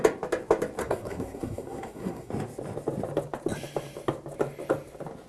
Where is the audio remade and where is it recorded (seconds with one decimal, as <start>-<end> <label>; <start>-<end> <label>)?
0.0-0.8 recorded; 0.8-2.3 remade; 2.3-5.3 recorded